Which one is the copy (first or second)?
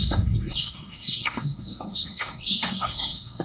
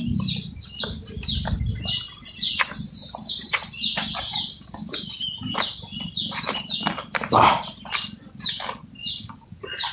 first